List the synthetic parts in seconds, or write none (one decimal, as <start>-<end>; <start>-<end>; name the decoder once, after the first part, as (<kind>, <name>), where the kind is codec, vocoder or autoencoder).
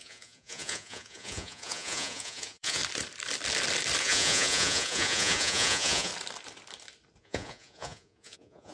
0.0-2.8 (vocoder, Vocos); 4.0-6.1; 7.2-8.7